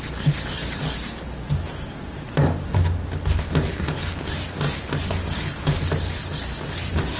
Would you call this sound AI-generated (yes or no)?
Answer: no